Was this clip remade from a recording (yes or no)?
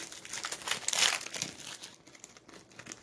no